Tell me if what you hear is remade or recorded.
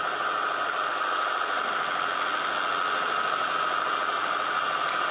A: recorded